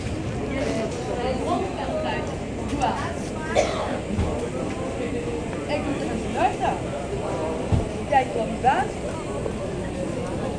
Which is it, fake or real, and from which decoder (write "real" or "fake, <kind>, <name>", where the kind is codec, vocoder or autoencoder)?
real